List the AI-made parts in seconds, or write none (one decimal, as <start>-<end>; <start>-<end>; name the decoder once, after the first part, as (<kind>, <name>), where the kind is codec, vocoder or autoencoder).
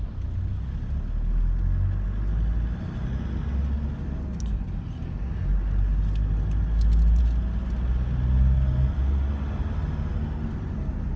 none